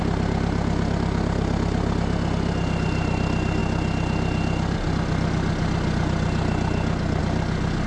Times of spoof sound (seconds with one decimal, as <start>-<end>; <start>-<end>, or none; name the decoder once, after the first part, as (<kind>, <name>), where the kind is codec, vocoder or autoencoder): none